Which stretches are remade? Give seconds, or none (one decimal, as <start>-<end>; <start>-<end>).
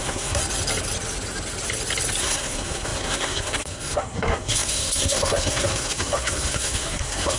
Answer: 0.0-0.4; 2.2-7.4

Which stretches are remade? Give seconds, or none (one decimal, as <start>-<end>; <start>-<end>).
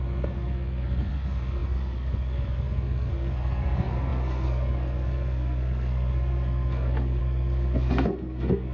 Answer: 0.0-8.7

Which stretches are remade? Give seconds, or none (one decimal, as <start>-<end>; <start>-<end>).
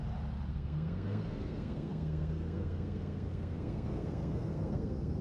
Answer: 0.5-5.2